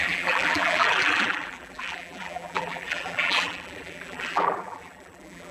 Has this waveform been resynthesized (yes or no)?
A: yes